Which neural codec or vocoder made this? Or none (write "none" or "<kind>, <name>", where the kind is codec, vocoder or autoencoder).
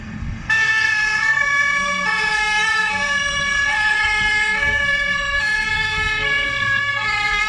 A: codec, SNAC